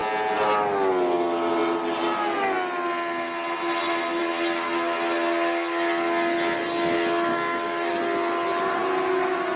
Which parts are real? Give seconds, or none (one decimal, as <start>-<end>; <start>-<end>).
0.0-7.3; 7.9-9.6